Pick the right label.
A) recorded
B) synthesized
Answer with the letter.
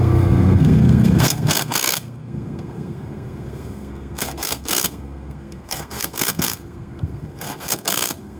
B